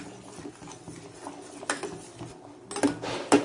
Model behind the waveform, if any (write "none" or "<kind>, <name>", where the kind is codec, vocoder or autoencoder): none